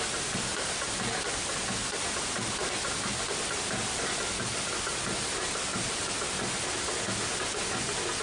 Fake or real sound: real